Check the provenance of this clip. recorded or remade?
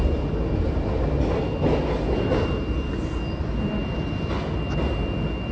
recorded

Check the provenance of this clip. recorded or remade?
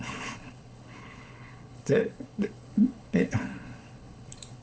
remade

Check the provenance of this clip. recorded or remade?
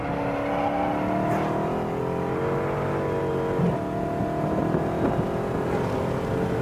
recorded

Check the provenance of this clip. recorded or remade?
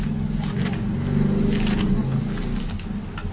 recorded